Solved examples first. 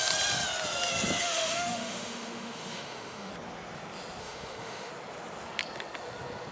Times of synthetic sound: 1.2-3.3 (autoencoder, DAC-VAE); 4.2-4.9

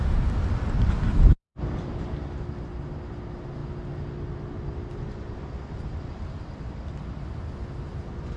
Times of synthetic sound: none

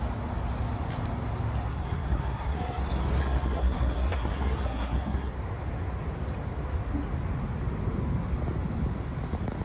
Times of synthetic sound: 1.7-2.8 (codec, SNAC); 3.2-5.3

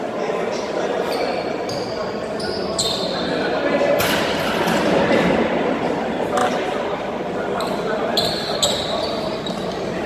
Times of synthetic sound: none

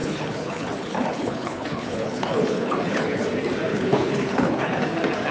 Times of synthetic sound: 0.0-3.2 (codec, HILCodec); 3.7-4.8

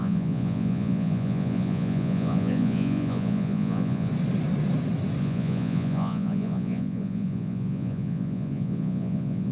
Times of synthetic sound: 0.0-4.1 (vocoder, Vocos); 5.2-9.5

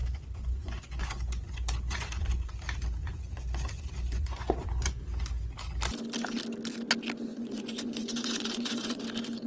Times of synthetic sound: 0.0-2.6 (vocoder, Vocos); 3.0-5.0; 7.3-9.0

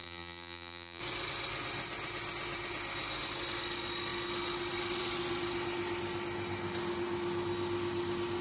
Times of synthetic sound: 0.0-1.0 (vocoder, BigVGAN v2)